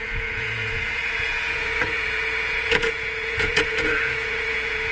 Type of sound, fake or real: fake